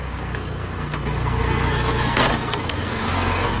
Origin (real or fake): fake